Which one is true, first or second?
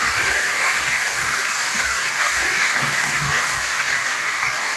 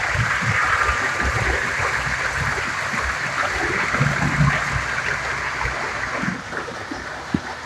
second